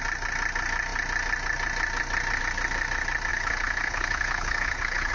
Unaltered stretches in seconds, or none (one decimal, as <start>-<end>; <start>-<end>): 0.0-3.3